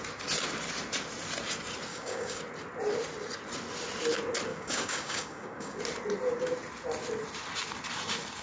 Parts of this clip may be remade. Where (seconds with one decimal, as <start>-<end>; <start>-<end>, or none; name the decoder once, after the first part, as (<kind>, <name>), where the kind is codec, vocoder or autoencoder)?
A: 1.9-2.4 (codec, DAC); 4.5-5.8